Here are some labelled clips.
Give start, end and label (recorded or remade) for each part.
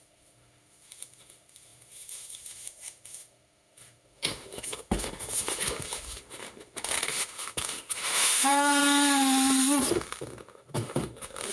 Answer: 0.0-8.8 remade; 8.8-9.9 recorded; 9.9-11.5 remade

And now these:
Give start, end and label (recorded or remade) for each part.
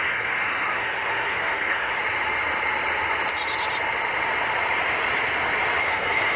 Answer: 0.0-2.0 remade; 2.0-5.8 recorded; 5.8-6.4 remade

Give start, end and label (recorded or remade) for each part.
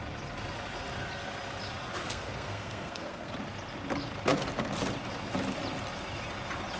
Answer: 0.0-2.0 recorded; 2.0-3.3 remade; 3.3-6.8 recorded